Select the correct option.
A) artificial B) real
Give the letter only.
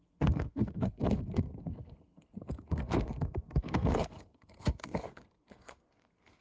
A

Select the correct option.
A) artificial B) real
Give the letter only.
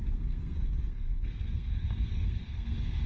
A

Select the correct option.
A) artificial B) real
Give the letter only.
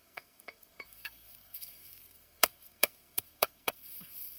A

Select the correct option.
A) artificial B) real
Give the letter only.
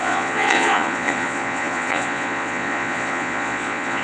A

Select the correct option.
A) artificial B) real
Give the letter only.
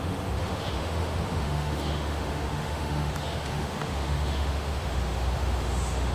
A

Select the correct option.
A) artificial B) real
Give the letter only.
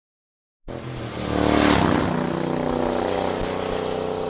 B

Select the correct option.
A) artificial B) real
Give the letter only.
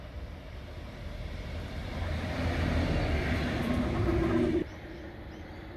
B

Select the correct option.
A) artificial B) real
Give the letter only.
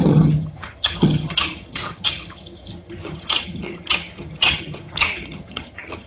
A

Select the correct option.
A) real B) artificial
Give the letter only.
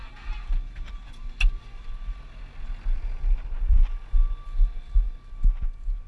A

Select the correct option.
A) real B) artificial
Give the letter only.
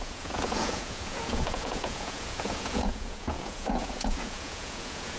B